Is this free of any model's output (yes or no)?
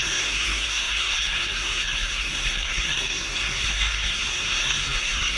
no